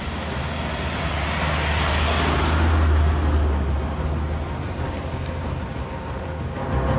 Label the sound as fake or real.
real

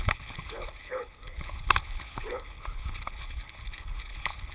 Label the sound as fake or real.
fake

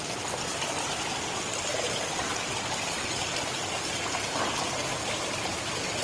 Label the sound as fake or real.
real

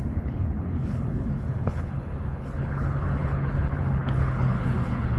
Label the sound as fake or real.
fake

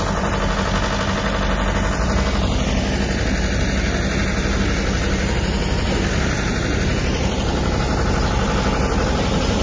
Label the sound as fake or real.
real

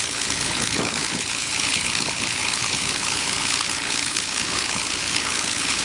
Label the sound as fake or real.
fake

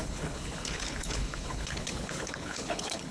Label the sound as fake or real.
fake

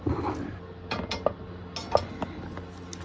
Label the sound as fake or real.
real